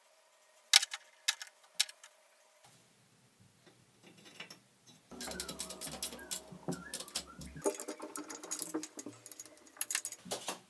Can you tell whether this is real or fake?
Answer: real